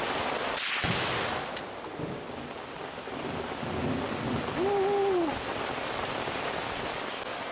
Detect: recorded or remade recorded